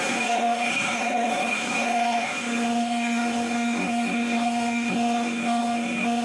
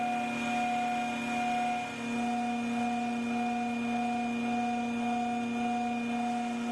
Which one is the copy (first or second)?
first